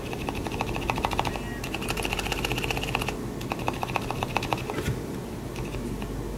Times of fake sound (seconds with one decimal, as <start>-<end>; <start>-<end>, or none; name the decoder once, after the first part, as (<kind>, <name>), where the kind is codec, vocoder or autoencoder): none